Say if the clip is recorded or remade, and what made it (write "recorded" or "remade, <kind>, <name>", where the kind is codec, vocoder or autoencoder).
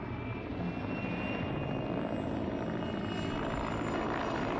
recorded